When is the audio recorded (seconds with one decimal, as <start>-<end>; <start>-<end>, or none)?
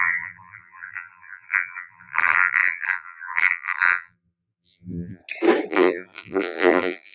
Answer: 5.2-5.7